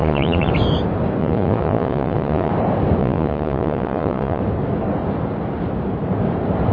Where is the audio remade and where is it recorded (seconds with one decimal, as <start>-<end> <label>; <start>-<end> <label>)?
0.0-0.5 remade; 0.5-1.2 recorded; 1.2-2.5 remade; 2.5-3.0 recorded; 3.0-4.4 remade; 4.4-6.7 recorded